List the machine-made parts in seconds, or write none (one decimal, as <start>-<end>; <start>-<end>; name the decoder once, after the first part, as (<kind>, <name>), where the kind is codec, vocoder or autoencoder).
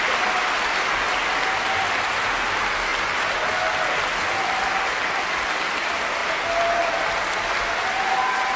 none